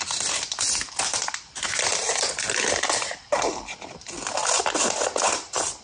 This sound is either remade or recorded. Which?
recorded